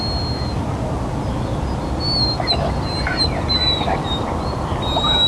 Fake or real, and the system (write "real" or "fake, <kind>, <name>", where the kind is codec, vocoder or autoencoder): real